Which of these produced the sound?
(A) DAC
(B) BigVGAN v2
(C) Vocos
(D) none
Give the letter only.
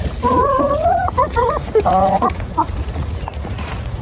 C